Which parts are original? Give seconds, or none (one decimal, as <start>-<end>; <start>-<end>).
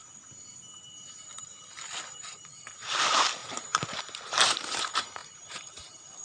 0.0-1.1